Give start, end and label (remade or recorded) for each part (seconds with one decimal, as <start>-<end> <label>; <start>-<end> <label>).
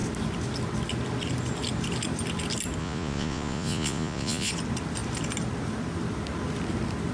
0.0-2.8 recorded; 2.8-4.5 remade; 4.5-7.1 recorded